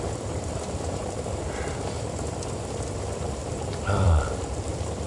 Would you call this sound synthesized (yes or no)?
yes